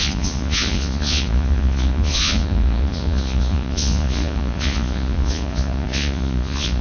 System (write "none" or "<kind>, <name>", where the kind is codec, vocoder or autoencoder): vocoder, Vocos